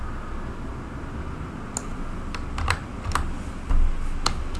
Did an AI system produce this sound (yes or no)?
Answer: no